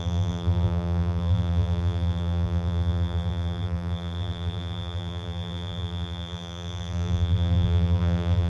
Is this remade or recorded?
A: remade